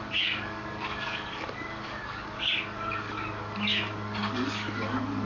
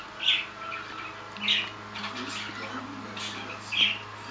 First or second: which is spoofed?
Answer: first